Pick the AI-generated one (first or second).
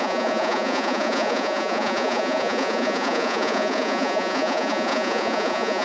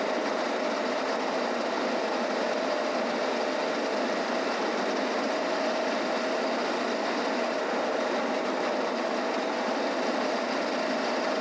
first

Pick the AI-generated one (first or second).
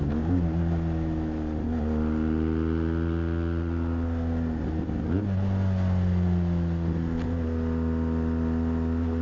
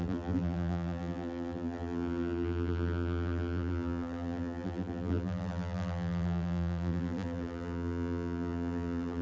second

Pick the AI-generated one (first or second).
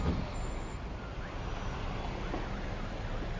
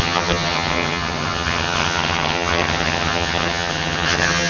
second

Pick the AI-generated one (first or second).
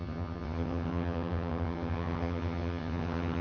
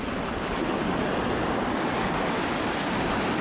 first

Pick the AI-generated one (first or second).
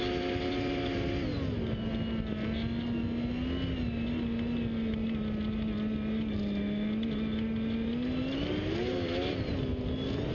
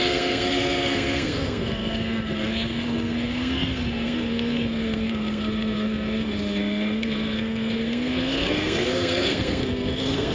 second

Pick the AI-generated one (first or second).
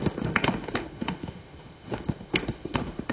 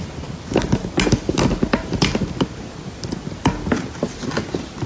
first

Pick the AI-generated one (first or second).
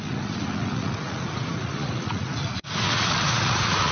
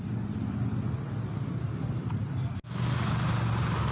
first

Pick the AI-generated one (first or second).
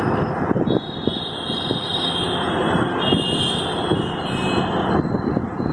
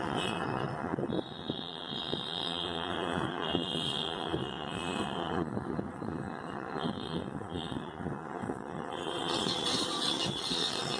second